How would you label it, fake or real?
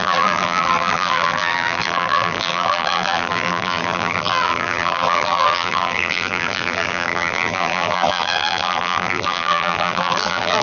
fake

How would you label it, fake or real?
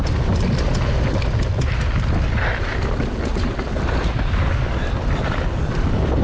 real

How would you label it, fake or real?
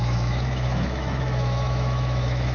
fake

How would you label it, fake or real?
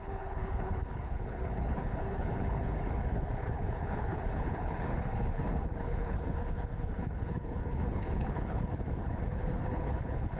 fake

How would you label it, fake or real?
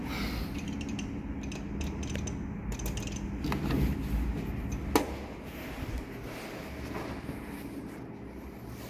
real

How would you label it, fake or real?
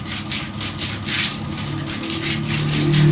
real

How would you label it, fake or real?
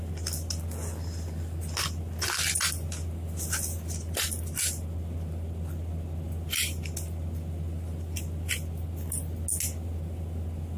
real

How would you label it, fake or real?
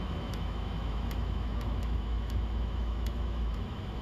fake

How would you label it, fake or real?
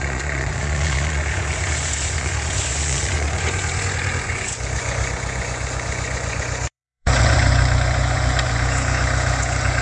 fake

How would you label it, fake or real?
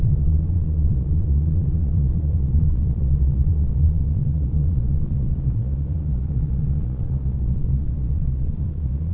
fake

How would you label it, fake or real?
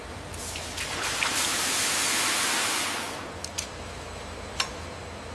real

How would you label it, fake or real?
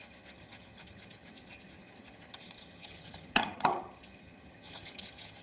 fake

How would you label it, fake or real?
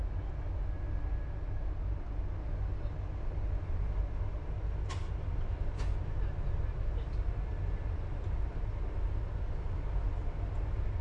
real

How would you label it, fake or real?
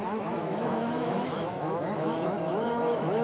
fake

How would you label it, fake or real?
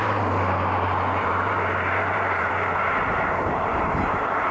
fake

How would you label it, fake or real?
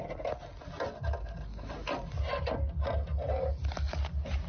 real